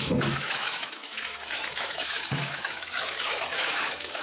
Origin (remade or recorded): remade